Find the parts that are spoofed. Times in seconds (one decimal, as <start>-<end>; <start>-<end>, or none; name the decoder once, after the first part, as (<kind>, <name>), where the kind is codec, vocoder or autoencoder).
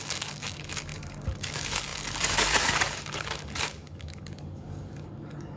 0.0-5.6 (codec, DAC)